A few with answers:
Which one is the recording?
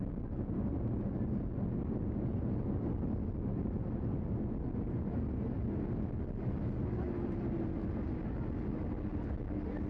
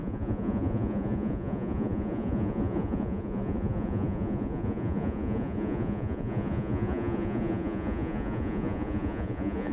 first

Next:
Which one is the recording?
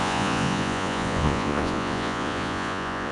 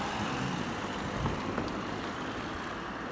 second